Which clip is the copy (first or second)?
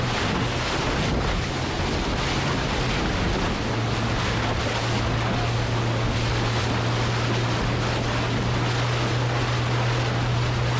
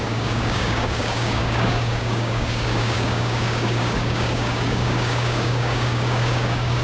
second